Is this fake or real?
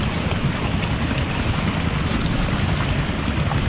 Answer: real